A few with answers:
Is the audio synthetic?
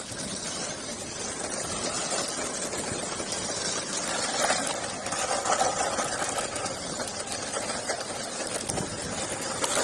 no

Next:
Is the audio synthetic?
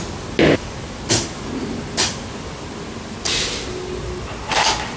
no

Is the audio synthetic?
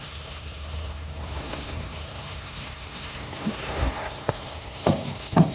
yes